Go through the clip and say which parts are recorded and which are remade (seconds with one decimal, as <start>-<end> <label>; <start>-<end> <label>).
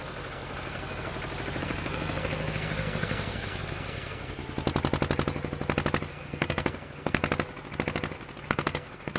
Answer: 0.0-1.1 remade; 1.1-1.6 recorded; 1.6-4.4 remade; 4.4-6.1 recorded; 6.1-7.2 remade; 7.2-8.5 recorded; 8.5-9.2 remade